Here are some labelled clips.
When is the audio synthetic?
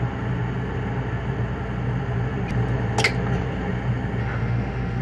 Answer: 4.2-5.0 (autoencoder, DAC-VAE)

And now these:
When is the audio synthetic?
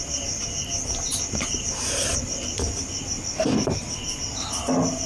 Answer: none